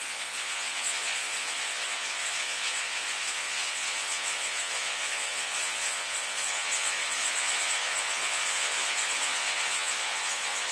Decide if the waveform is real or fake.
fake